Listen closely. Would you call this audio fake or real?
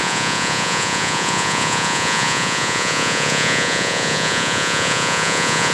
fake